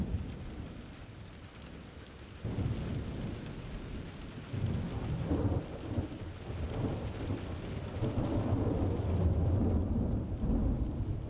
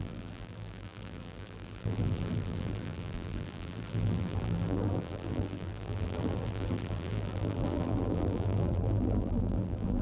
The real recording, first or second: first